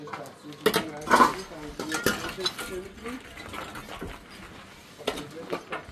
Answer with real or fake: real